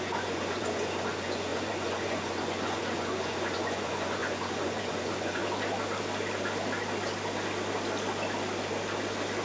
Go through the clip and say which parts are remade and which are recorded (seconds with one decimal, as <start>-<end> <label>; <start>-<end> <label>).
0.0-5.4 remade; 5.4-9.4 recorded

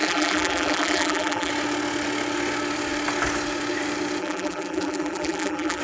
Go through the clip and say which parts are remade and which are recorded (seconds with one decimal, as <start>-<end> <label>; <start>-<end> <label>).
0.0-1.5 remade; 1.5-4.2 recorded; 4.2-5.8 remade

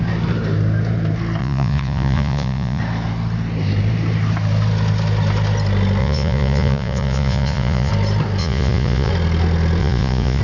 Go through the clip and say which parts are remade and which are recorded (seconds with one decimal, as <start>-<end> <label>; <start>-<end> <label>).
0.0-1.4 recorded; 1.4-2.8 remade; 2.8-6.0 recorded; 6.0-7.9 remade; 7.9-8.4 recorded; 8.4-9.1 remade; 9.1-9.8 recorded; 9.8-10.4 remade